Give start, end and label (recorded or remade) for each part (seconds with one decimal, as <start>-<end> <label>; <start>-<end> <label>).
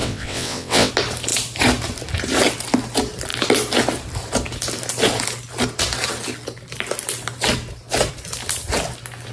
0.0-0.9 remade; 0.9-9.3 recorded